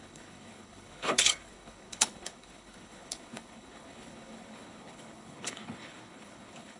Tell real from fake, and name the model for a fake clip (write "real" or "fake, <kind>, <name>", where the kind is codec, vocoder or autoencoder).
fake, codec, HILCodec